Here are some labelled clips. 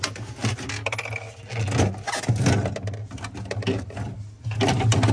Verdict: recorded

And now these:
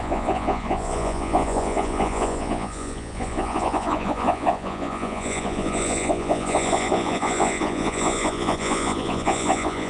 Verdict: remade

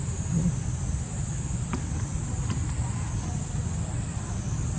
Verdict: recorded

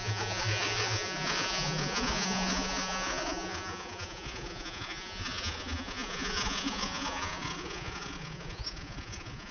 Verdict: remade